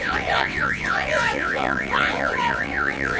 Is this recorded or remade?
remade